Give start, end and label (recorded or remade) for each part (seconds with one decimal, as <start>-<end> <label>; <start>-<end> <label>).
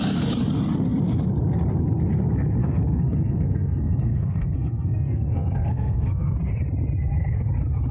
0.0-2.6 recorded; 2.6-6.3 remade; 6.3-7.9 recorded